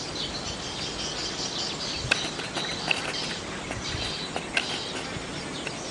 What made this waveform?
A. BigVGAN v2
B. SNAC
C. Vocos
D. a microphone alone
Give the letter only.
D